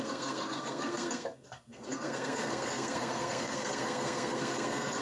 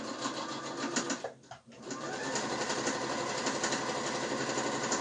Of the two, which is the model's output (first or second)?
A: first